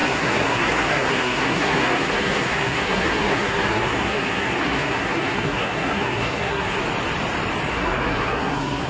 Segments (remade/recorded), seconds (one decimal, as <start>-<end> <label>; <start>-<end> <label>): 0.0-6.8 remade; 6.8-7.7 recorded; 7.7-8.9 remade

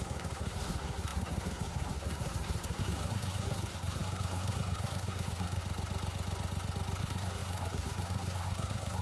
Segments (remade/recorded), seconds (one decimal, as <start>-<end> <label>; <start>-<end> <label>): 0.0-5.6 remade; 5.6-7.0 recorded; 7.0-9.0 remade

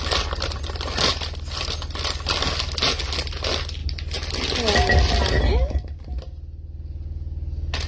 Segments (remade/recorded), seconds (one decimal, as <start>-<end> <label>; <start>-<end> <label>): 0.0-7.9 recorded

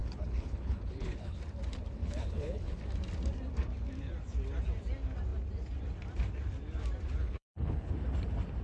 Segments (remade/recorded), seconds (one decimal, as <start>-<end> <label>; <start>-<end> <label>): 0.0-1.4 remade; 1.4-2.0 recorded; 2.0-2.8 remade; 2.8-7.2 recorded; 7.2-7.9 remade; 7.9-8.6 recorded